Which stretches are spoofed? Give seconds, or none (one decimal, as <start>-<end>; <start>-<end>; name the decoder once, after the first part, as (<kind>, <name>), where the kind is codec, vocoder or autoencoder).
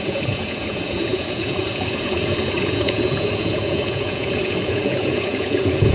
0.0-5.9 (vocoder, Vocos)